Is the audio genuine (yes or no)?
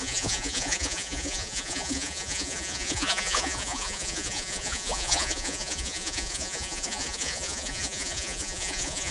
no